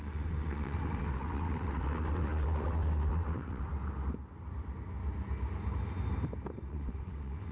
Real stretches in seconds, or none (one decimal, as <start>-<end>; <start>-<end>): 3.7-6.7